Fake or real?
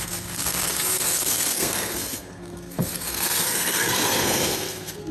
fake